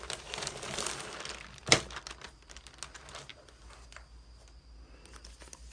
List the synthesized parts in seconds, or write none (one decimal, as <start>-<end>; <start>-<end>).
none